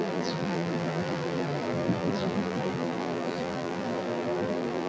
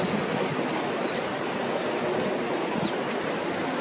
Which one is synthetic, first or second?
first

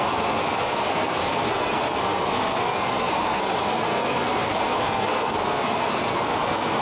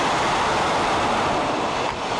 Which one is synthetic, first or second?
first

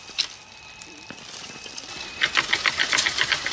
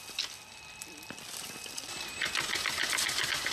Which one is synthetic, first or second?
first